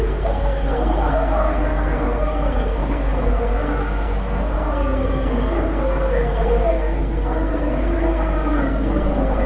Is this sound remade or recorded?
remade